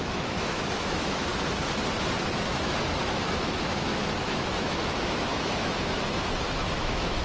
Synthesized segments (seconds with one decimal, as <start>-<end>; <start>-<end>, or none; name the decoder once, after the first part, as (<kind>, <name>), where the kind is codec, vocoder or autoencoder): 0.0-1.3 (autoencoder, DAC-VAE); 2.3-7.2